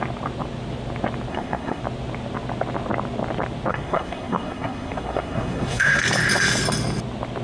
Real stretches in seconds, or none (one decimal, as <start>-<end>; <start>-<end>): 0.0-1.3; 1.8-3.7; 6.0-7.4

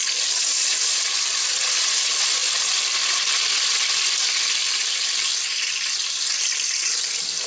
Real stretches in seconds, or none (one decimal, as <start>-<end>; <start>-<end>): 0.0-7.5

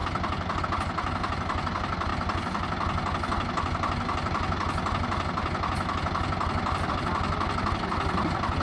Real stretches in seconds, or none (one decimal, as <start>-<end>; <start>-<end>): 0.0-8.6

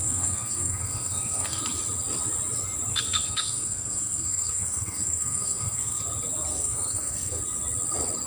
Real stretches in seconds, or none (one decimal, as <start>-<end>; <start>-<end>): 1.6-2.9; 6.0-6.5; 7.4-8.3